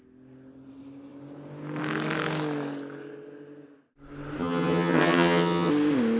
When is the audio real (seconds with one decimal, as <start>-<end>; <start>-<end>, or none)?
0.0-4.4; 5.7-6.2